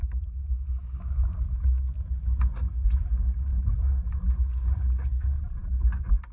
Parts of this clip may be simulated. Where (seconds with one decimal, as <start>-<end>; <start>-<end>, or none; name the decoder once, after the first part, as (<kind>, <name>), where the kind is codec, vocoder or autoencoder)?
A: none